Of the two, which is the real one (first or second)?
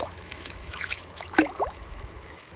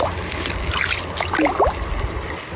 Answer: second